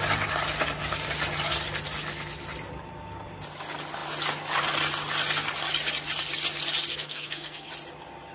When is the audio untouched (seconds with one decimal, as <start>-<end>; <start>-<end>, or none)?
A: 0.0-6.9; 7.7-8.3